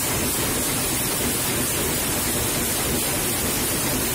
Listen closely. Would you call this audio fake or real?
real